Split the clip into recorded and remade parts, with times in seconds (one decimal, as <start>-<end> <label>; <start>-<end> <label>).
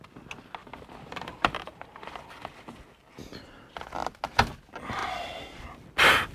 0.0-0.6 recorded; 0.6-3.0 remade; 3.0-6.3 recorded